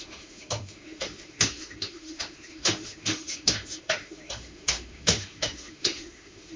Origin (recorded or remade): remade